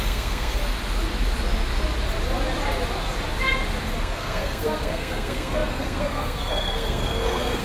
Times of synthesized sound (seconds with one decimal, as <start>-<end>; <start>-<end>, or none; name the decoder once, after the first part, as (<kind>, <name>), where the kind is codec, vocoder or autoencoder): 0.0-0.6 (codec, SNAC); 4.0-7.6